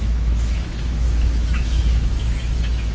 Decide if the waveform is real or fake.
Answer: fake